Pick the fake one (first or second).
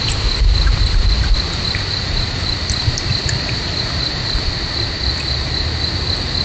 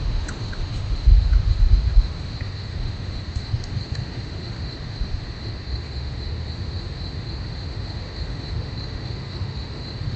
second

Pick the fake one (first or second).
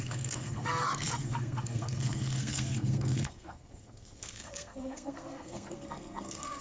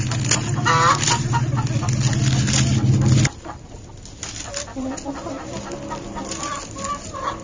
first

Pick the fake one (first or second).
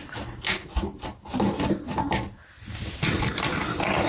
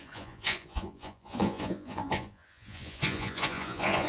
second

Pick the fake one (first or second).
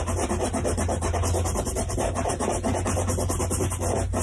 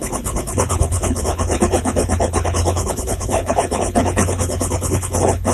second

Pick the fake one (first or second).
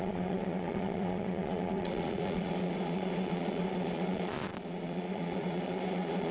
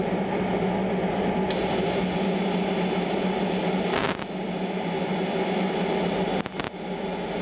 first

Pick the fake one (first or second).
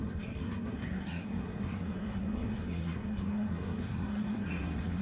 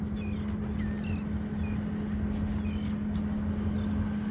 first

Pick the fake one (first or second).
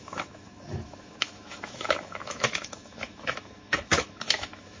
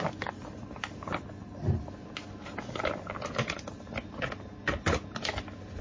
first